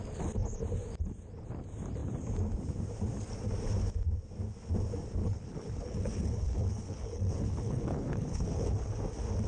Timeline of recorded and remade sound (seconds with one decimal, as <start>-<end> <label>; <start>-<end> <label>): 0.0-5.2 recorded; 5.2-8.9 remade; 8.9-9.5 recorded